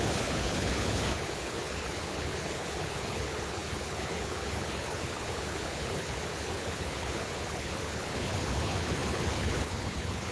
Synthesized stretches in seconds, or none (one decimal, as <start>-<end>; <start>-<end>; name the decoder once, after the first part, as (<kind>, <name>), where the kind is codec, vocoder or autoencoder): 0.0-10.3 (codec, HILCodec)